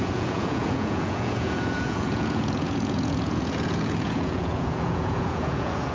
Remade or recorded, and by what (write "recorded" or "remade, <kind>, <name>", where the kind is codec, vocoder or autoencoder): remade, vocoder, Vocos